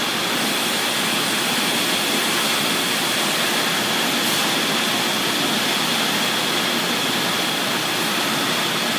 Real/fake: real